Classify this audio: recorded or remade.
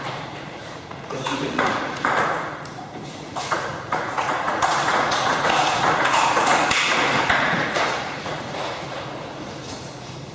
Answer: remade